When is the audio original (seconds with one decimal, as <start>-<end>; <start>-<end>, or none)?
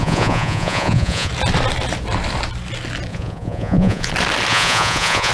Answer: 1.3-3.1; 4.1-4.5